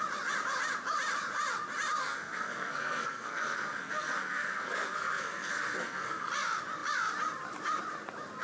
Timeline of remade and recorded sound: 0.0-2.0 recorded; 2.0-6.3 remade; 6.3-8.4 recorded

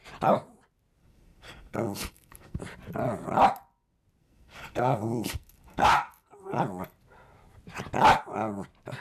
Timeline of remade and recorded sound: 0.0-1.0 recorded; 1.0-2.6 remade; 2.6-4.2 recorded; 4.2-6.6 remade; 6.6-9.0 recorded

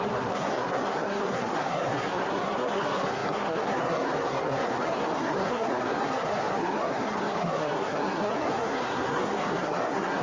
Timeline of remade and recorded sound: 0.0-10.2 remade